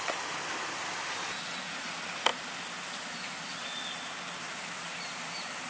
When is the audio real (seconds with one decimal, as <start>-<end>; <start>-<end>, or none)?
0.0-5.7